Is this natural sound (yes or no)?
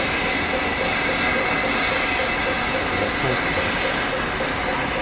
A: yes